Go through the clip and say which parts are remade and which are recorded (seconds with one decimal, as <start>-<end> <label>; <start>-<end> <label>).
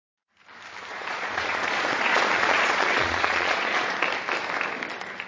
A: 0.0-0.9 recorded; 0.9-4.1 remade; 4.1-5.3 recorded